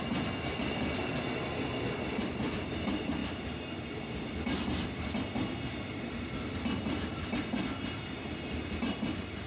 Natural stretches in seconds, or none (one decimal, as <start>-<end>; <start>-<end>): 0.0-9.5